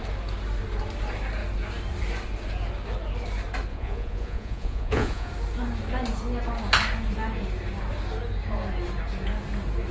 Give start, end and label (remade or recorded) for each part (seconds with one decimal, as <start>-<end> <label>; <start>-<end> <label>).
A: 0.0-3.7 recorded; 3.7-5.3 remade; 5.3-9.9 recorded